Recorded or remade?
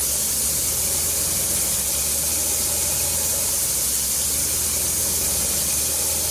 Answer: recorded